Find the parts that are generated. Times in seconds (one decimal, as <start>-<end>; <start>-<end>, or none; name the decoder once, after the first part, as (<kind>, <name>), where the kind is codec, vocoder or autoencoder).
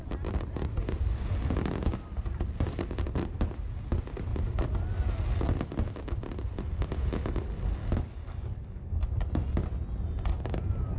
7.8-9.2 (codec, DAC)